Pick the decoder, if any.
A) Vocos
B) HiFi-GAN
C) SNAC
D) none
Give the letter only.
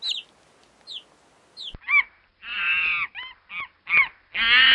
D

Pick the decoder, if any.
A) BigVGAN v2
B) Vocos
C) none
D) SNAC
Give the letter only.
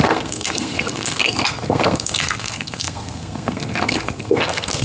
D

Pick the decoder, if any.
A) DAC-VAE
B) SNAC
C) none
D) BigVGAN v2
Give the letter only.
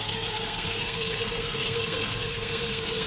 B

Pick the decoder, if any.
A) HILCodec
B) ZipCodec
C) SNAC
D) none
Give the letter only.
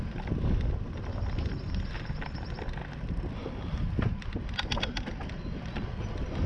D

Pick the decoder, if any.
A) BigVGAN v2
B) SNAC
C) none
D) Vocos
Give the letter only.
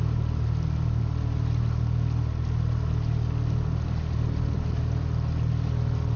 C